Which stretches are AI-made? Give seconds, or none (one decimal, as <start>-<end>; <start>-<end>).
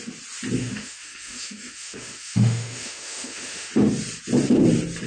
0.6-3.7